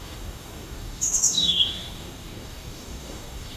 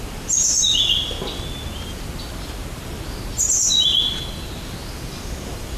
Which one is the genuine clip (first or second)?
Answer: second